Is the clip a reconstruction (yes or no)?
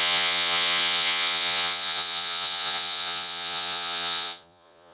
yes